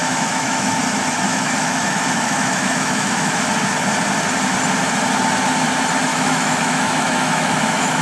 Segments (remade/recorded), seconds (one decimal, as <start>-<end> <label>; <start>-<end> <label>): 0.0-0.8 remade; 0.8-1.3 recorded; 1.3-3.4 remade; 3.4-6.1 recorded; 6.1-8.0 remade